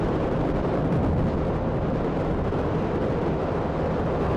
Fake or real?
real